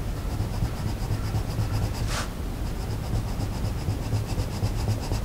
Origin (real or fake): real